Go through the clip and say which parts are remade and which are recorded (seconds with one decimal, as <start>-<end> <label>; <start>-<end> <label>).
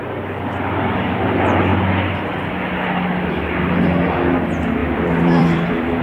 0.0-4.8 recorded; 4.8-6.0 remade